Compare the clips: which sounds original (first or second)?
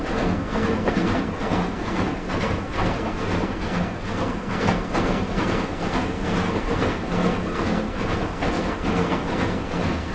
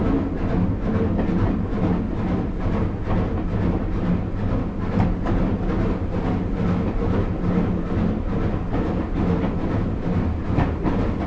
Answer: second